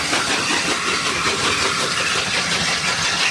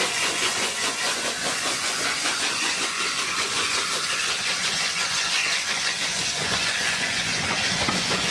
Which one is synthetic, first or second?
second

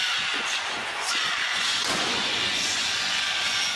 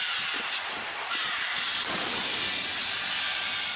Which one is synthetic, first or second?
first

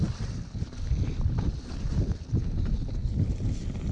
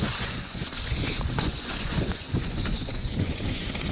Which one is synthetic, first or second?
second